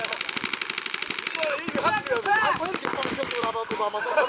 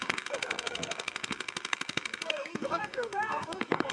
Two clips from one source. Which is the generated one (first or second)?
second